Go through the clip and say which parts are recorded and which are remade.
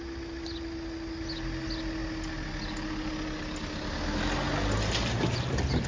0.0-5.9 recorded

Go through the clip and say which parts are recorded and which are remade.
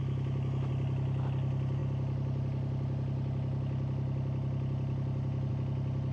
0.0-0.7 remade; 0.7-6.1 recorded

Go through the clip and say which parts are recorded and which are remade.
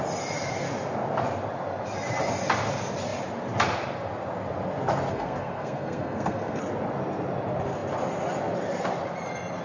0.0-5.1 recorded; 5.1-6.6 remade; 6.6-9.6 recorded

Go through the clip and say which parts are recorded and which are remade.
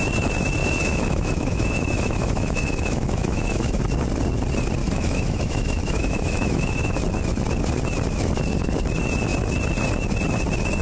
0.0-0.6 recorded; 0.6-3.8 remade; 3.8-4.8 recorded; 4.8-7.0 remade; 7.0-10.8 recorded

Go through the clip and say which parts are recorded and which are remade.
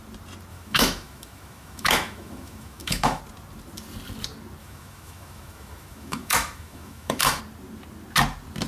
0.0-0.5 recorded; 0.5-3.2 remade; 3.2-4.6 recorded; 4.6-7.4 remade; 7.4-8.7 recorded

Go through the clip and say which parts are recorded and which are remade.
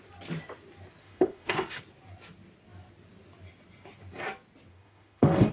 0.0-1.0 recorded; 1.0-1.8 remade; 1.8-4.7 recorded; 4.7-5.5 remade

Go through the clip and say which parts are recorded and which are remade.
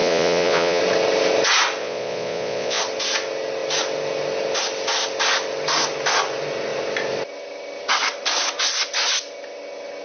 0.0-0.8 remade; 0.8-1.8 recorded; 1.8-2.8 remade; 2.8-10.0 recorded